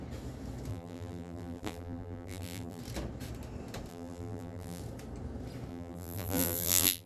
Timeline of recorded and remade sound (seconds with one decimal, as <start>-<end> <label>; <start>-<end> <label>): 0.0-0.7 recorded; 0.7-2.8 remade; 2.8-3.9 recorded; 3.9-4.8 remade; 4.8-5.7 recorded; 5.7-7.1 remade